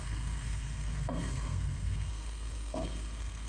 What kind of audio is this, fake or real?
fake